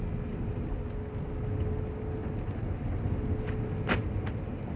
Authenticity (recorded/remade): recorded